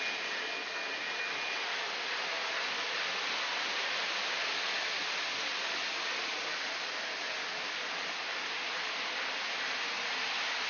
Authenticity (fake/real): real